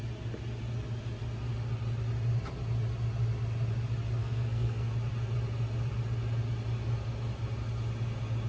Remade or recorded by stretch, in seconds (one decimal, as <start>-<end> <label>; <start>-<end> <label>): 0.0-4.2 recorded; 4.2-4.9 remade; 4.9-8.5 recorded